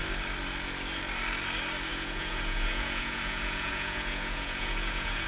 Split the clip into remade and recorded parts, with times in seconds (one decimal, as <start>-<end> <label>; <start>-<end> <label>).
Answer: 0.0-1.9 recorded; 1.9-5.3 remade

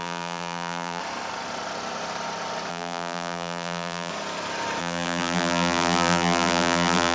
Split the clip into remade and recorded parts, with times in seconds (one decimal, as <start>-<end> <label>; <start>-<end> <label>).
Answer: 0.0-1.0 remade; 1.0-2.7 recorded; 2.7-4.1 remade; 4.1-4.8 recorded; 4.8-7.1 remade